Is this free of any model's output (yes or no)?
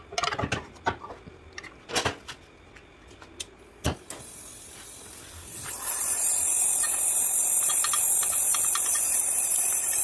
yes